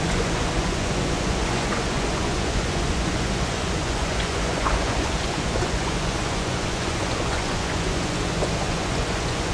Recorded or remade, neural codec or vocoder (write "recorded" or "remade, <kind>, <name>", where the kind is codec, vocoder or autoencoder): remade, vocoder, Vocos